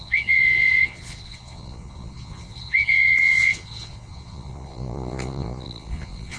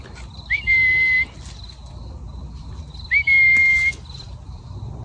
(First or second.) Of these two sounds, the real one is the second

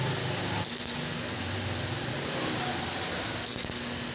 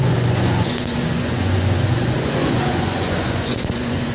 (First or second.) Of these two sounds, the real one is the first